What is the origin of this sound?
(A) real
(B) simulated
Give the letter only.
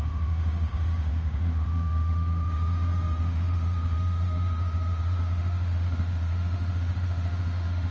B